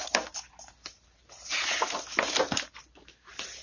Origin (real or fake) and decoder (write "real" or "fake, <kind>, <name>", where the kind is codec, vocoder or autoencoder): real